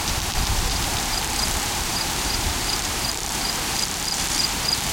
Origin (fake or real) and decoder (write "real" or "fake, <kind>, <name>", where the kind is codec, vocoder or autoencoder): fake, vocoder, BigVGAN v2